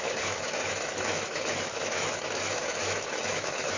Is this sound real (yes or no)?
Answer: no